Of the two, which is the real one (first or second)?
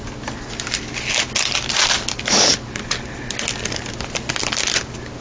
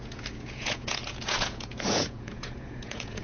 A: first